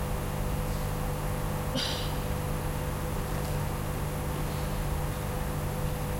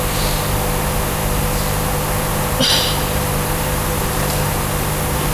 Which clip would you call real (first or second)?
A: first